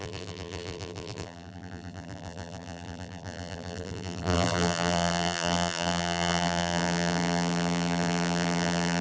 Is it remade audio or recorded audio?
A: remade